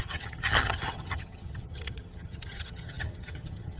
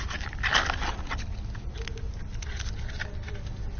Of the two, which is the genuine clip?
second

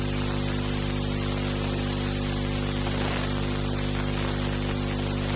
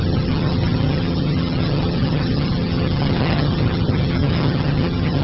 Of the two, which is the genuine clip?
first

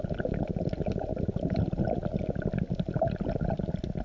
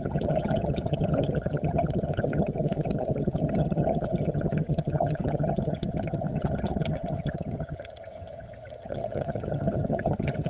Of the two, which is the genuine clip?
first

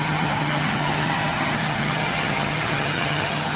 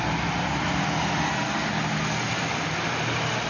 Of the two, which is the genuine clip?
second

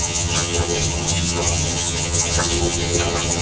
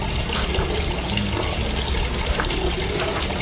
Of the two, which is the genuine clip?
second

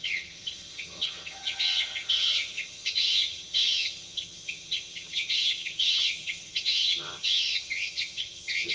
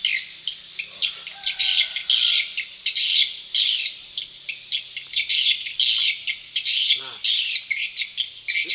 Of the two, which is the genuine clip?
second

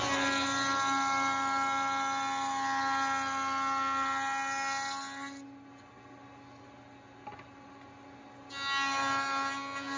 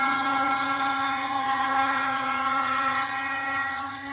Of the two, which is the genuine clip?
first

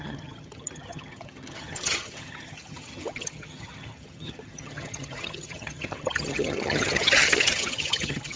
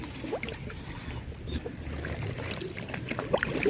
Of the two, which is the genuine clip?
second